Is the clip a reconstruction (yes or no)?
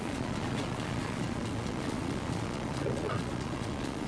yes